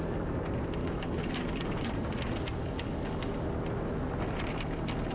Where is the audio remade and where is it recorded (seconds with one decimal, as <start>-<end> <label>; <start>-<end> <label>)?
0.0-0.8 recorded; 0.8-1.9 remade; 1.9-2.6 recorded; 2.6-3.3 remade; 3.3-5.1 recorded